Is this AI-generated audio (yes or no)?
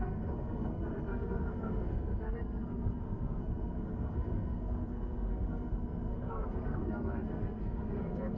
yes